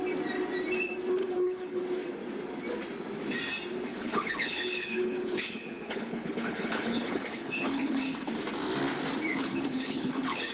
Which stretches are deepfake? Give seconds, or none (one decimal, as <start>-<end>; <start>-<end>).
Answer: 1.2-1.8; 3.9-8.3; 9.3-10.5